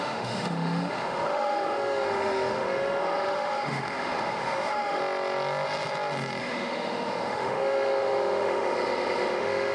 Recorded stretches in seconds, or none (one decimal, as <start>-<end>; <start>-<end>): 5.0-6.4